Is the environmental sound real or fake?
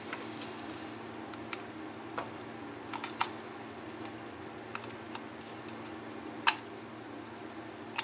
real